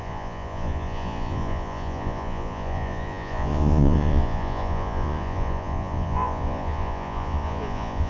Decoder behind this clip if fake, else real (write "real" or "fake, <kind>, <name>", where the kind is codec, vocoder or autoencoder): fake, vocoder, Vocos